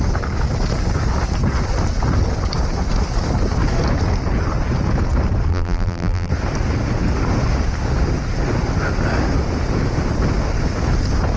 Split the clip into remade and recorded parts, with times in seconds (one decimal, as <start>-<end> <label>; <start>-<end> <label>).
0.0-5.5 recorded; 5.5-6.3 remade; 6.3-11.4 recorded